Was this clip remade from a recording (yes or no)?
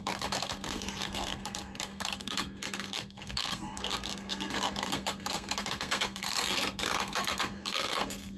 yes